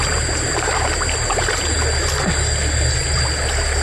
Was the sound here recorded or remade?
recorded